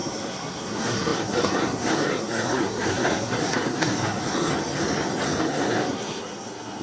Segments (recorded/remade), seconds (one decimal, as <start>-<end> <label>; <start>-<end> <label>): 0.0-4.5 remade; 4.5-5.4 recorded; 5.4-6.8 remade